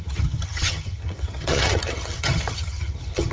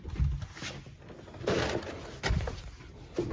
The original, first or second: second